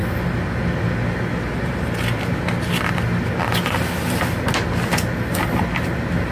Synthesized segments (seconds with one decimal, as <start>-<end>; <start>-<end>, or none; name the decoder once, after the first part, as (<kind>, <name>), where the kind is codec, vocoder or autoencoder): none